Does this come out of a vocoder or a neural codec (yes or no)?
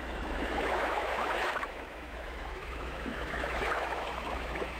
yes